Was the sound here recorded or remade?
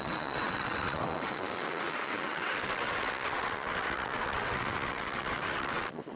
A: remade